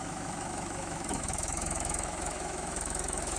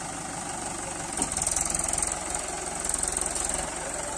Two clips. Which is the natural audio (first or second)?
second